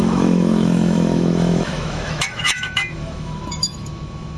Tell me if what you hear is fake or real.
fake